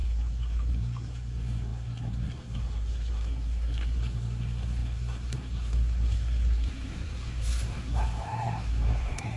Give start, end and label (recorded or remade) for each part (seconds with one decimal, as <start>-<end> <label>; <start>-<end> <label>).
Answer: 0.0-9.4 remade